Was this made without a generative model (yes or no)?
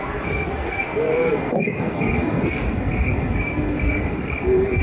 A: no